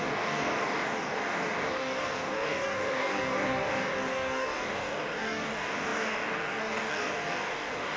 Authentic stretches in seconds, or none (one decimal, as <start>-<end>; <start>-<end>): none

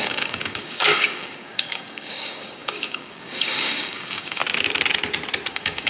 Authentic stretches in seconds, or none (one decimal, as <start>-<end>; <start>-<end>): 4.4-5.5

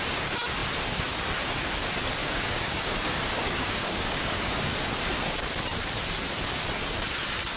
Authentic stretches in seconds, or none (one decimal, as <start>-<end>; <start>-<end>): 0.0-2.2; 4.7-7.6

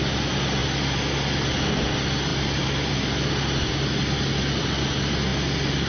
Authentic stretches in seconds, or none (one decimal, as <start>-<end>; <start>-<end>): 0.0-5.9

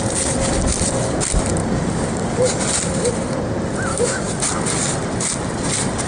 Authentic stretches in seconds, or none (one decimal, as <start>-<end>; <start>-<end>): 0.0-1.6; 2.6-3.9; 4.6-6.1